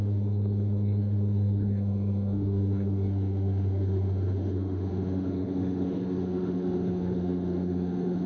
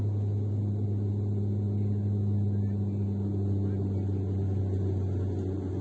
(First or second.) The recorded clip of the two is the second